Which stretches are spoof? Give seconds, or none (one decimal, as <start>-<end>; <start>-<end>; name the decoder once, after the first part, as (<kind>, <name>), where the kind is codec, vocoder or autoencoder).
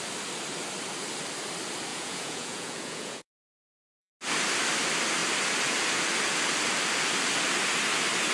1.9-4.1 (vocoder, Vocos)